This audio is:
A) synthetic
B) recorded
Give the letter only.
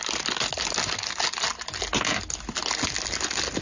B